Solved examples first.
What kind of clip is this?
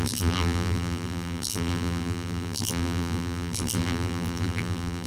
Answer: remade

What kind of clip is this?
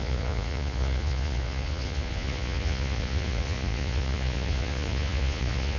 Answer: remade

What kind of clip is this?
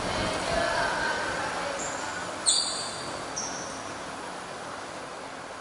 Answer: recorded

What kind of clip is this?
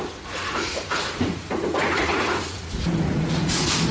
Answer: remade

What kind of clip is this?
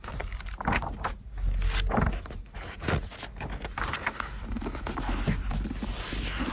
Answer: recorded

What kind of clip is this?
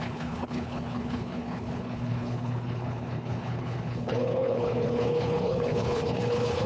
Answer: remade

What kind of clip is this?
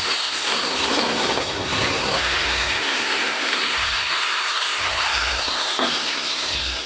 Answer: remade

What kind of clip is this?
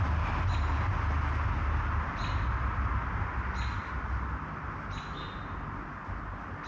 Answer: recorded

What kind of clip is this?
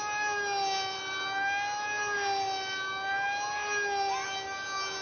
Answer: recorded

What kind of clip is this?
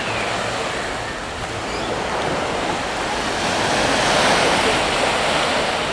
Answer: recorded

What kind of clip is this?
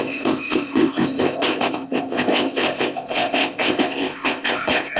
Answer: remade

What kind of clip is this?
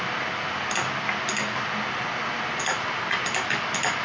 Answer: recorded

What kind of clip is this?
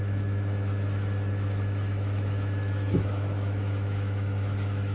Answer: remade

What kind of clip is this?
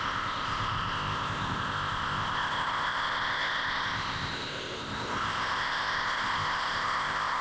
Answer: remade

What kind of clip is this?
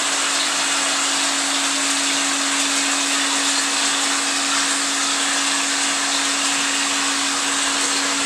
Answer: recorded